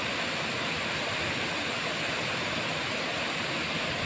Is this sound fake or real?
real